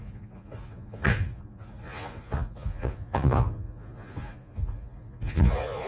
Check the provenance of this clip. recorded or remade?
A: remade